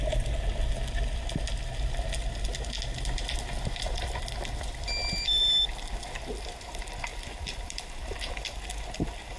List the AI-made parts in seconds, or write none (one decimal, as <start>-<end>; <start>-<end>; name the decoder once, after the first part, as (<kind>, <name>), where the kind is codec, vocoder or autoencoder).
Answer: 2.9-5.6 (vocoder, BigVGAN v2); 7.1-8.3